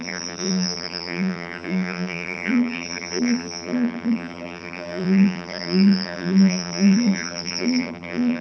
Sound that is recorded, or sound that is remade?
remade